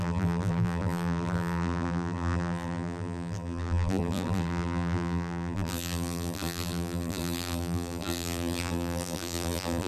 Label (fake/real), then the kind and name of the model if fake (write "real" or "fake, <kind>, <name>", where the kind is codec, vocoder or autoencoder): fake, vocoder, BigVGAN v2